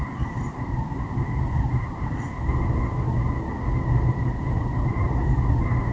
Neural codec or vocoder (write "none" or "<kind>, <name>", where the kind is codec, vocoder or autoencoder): none